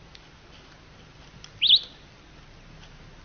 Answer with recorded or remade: recorded